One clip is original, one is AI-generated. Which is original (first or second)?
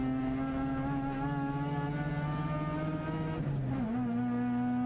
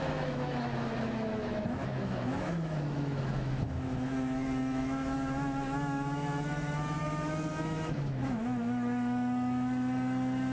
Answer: first